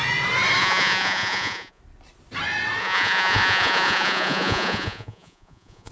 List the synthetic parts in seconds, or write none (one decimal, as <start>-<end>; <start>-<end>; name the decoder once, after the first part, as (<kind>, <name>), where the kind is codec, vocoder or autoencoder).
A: 0.6-1.8 (vocoder, Vocos); 2.8-5.9